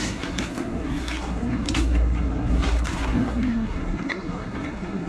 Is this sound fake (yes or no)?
yes